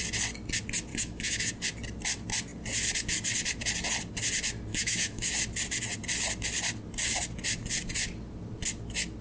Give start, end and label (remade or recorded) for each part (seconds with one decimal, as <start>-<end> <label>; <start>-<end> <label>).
0.0-0.9 recorded; 0.9-1.5 remade; 1.5-4.7 recorded; 4.7-5.3 remade; 5.3-9.2 recorded